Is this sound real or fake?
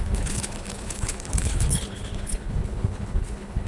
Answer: fake